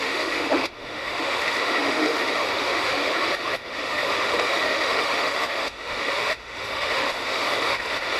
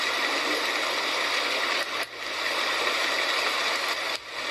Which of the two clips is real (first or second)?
second